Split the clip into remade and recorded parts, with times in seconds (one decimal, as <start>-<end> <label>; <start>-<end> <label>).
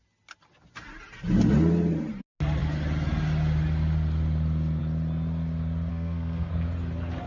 0.0-5.9 recorded; 5.9-6.5 remade; 6.5-7.3 recorded